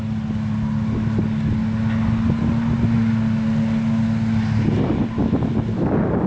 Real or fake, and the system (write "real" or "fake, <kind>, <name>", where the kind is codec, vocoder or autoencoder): real